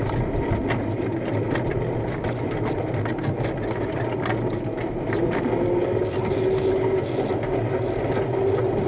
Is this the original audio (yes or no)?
yes